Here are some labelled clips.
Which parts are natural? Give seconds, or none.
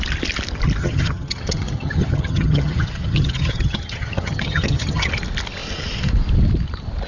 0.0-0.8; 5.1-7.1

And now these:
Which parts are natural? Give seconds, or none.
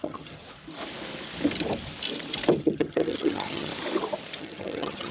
0.4-2.6; 3.7-4.4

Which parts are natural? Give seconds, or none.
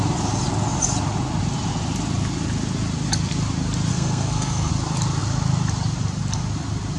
0.0-3.9; 4.7-7.0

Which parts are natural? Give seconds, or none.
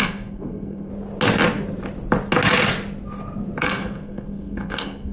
0.9-3.6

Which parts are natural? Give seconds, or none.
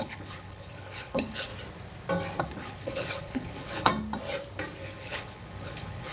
1.5-2.4; 3.9-4.8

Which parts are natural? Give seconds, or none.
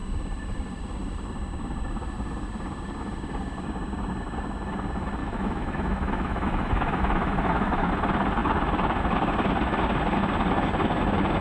0.0-5.2; 7.9-11.4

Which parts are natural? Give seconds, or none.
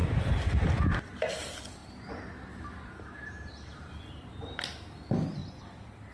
1.2-1.8; 3.9-5.4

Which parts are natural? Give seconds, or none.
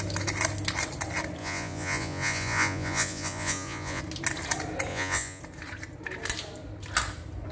0.0-1.4; 4.0-4.9; 5.4-7.5